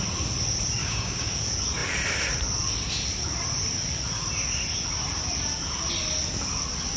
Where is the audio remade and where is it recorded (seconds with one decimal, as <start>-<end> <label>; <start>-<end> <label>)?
0.0-0.8 recorded; 0.8-1.4 remade; 1.4-7.0 recorded